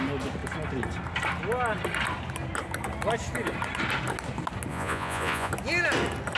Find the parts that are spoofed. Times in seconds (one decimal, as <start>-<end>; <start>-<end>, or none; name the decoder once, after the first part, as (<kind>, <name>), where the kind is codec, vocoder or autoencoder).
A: 4.7-5.5 (vocoder, Vocos)